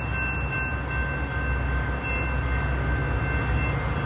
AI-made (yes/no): no